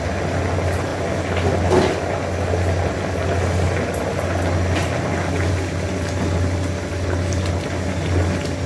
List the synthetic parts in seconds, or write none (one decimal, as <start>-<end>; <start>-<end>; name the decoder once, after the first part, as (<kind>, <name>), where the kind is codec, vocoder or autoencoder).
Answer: none